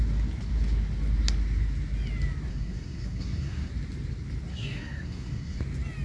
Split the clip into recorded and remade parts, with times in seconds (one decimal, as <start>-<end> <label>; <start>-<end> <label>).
0.0-2.5 recorded; 2.5-3.7 remade; 3.7-4.5 recorded; 4.5-5.6 remade; 5.6-6.0 recorded